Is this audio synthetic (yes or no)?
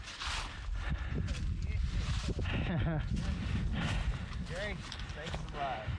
no